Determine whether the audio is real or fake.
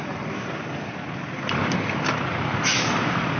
real